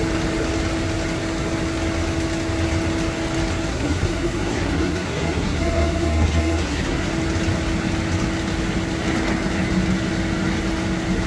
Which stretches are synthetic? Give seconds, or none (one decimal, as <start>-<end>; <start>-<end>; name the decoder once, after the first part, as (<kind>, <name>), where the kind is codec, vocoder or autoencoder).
3.7-7.1 (codec, SNAC)